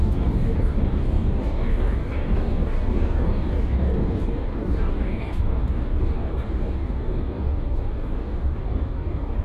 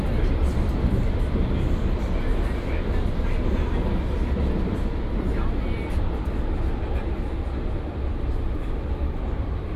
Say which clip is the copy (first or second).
first